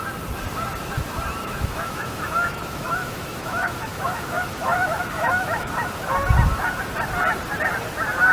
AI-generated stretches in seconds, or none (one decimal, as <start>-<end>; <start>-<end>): 1.4-5.7

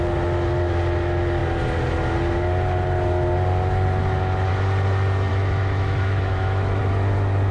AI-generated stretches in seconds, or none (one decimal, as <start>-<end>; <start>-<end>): 5.3-6.8

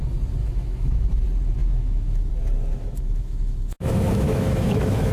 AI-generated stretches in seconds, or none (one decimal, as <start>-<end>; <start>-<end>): 0.4-1.1; 1.6-2.3; 2.7-5.1

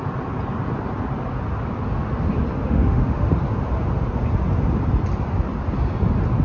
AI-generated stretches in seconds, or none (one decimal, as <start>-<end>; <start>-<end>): 2.6-3.3

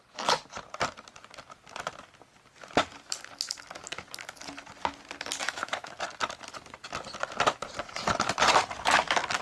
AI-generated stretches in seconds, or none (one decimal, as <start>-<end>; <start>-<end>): 5.4-5.9

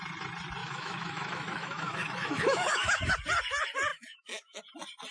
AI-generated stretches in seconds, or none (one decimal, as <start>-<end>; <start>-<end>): 0.6-3.1; 3.9-4.6